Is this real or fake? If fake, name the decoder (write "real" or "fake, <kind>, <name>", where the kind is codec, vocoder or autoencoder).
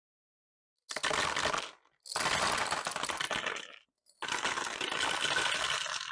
real